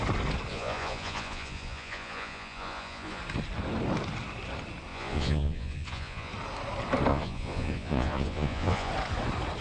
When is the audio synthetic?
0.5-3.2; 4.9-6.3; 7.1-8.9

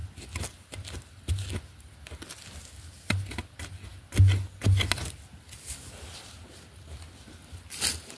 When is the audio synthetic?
none

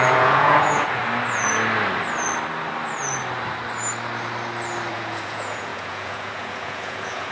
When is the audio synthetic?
0.0-1.0; 4.9-7.3

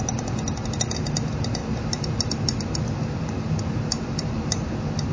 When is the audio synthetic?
none